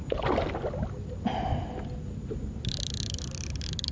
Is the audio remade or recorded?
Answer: recorded